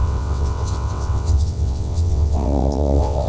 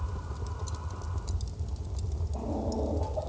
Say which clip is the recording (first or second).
second